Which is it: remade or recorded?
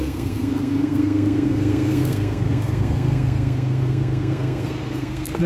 remade